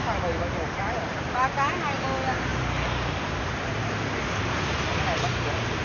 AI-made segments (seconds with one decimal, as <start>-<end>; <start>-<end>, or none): none